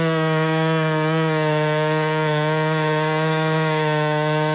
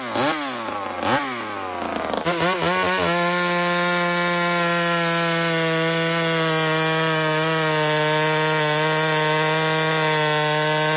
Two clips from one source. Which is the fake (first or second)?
first